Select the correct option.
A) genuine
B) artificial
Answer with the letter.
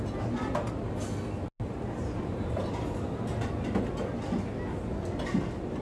A